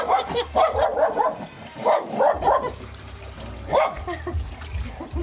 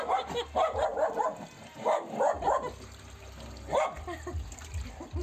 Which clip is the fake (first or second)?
first